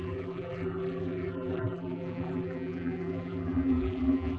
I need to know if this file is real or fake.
fake